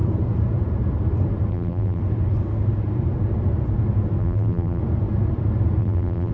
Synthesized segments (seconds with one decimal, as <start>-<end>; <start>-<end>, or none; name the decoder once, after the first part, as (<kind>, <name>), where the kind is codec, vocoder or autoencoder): 1.5-2.0 (vocoder, BigVGAN v2); 4.2-4.8; 5.8-6.3

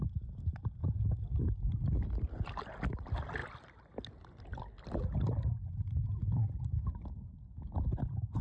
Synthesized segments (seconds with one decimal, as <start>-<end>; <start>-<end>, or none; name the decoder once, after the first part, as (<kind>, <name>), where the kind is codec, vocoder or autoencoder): none

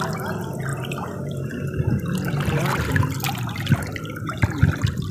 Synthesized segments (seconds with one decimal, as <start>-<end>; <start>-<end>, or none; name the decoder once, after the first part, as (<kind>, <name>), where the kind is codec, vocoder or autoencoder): 0.7-2.8 (vocoder, BigVGAN v2)

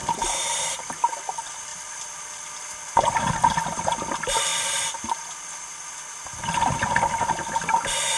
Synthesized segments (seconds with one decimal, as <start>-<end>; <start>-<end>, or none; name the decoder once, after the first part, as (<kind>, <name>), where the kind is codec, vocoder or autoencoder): 1.7-3.3 (vocoder, BigVGAN v2); 4.5-6.1

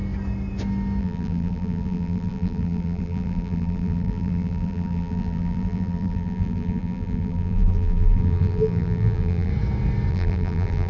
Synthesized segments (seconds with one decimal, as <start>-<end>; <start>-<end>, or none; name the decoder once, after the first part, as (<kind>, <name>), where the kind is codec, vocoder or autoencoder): 1.0-9.5 (vocoder, BigVGAN v2); 10.1-10.9

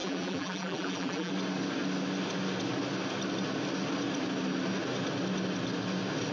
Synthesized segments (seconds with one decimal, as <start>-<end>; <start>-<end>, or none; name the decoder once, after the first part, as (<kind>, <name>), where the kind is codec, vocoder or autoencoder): 0.0-1.3 (vocoder, BigVGAN v2)

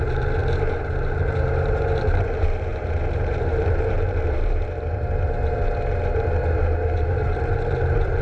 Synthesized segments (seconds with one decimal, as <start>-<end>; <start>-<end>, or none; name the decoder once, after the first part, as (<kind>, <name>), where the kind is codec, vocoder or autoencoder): 0.0-6.1 (vocoder, BigVGAN v2); 7.0-8.2